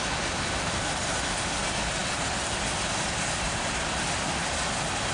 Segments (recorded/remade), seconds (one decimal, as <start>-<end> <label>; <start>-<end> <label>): 0.0-5.1 recorded